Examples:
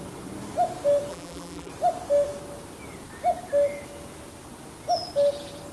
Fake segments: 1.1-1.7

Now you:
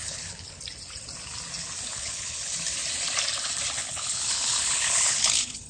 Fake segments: 0.0-0.6; 1.9-2.4; 3.8-5.7

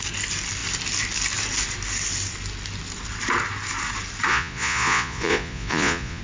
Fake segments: 4.3-6.2

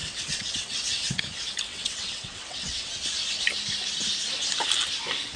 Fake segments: 0.0-1.2; 1.7-2.9

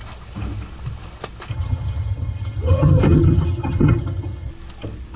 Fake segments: 1.5-4.5

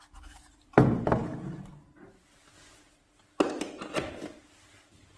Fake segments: none